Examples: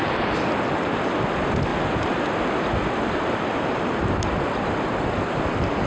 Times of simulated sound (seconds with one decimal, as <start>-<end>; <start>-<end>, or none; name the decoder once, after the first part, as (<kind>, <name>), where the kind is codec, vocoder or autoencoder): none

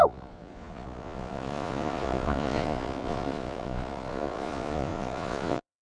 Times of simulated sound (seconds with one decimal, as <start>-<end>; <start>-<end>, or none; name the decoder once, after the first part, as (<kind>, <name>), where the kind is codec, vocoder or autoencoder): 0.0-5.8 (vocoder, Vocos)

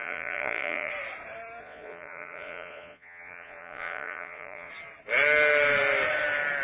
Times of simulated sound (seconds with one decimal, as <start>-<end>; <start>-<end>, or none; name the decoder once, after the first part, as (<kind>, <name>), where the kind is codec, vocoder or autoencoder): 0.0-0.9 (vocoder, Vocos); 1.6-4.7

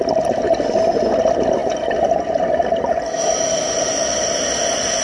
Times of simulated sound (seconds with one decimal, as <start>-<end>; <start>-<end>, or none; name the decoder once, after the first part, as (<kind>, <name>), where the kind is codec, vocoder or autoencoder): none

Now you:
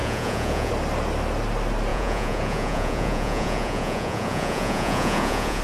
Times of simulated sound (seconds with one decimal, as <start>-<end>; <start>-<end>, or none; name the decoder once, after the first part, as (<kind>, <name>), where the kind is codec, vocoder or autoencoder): 0.0-0.7 (vocoder, Vocos); 1.9-5.6

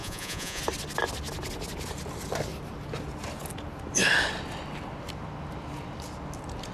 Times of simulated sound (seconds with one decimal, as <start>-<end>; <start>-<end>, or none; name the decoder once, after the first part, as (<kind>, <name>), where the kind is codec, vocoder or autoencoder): 0.0-0.6 (vocoder, Vocos)

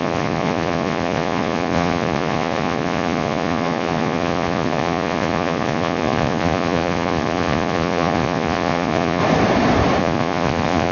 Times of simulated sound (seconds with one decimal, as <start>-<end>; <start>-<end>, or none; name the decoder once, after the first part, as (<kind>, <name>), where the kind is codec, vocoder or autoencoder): 0.0-9.2 (vocoder, Vocos); 10.0-10.9

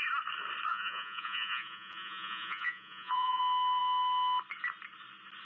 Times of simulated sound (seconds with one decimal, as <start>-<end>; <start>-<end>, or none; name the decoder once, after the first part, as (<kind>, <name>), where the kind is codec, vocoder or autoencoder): 0.7-3.4 (vocoder, Vocos)